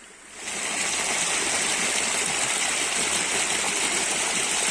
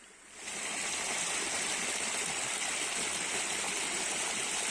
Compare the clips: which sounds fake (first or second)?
second